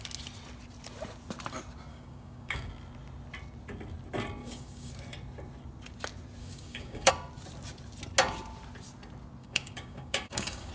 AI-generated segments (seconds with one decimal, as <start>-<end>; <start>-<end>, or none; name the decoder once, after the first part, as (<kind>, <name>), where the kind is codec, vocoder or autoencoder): 1.9-2.7 (codec, DAC); 4.4-4.9; 6.4-7.1; 9.4-10.7